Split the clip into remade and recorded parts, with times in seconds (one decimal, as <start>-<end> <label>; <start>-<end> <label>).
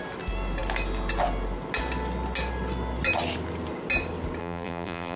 0.0-4.4 recorded; 4.4-5.2 remade